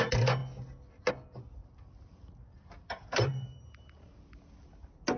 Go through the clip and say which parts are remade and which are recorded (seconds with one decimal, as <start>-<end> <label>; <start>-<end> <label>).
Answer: 0.0-1.6 recorded; 1.6-4.2 remade; 4.2-5.2 recorded

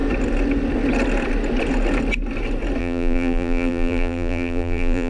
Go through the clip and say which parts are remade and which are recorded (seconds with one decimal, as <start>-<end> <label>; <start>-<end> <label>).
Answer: 0.0-2.8 recorded; 2.8-5.1 remade

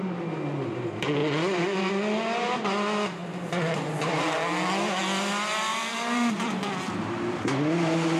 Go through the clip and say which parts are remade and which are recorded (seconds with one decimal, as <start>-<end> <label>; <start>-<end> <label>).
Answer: 0.0-1.2 recorded; 1.2-1.9 remade; 1.9-5.7 recorded; 5.7-7.3 remade; 7.3-8.2 recorded

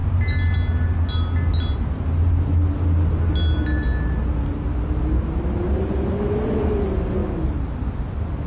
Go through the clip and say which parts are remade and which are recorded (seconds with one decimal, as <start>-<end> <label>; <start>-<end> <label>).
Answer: 0.0-8.5 recorded

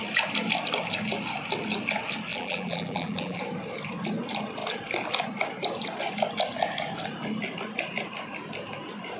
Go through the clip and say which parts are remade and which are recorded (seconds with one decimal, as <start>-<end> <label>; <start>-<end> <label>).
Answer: 0.0-2.3 recorded; 2.3-3.4 remade; 3.4-9.2 recorded

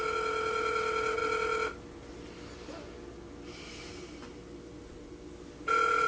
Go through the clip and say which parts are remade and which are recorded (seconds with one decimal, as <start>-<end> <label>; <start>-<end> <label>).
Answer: 0.0-6.1 recorded

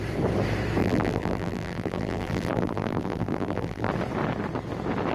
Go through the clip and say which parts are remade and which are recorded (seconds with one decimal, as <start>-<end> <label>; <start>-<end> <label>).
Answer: 0.0-0.8 recorded; 0.8-3.9 remade; 3.9-5.1 recorded